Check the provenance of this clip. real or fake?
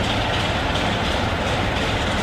real